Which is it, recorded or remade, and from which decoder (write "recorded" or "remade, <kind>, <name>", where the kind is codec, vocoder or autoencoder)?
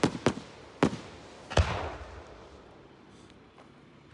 recorded